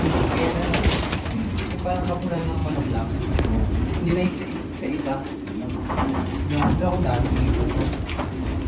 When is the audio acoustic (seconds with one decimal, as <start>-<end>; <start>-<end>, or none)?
5.1-6.7